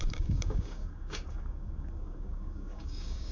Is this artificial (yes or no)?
yes